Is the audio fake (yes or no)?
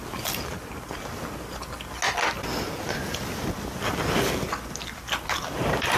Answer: no